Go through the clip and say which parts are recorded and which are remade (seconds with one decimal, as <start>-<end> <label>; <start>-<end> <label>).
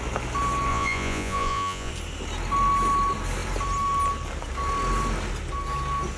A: 0.0-0.7 recorded; 0.7-1.9 remade; 1.9-6.2 recorded